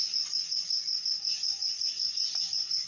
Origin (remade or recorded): remade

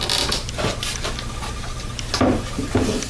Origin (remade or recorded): recorded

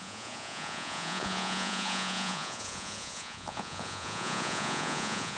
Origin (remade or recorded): remade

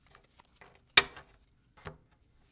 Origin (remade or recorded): recorded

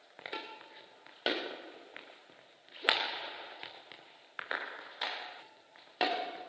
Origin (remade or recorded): recorded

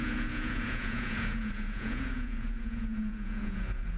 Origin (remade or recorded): remade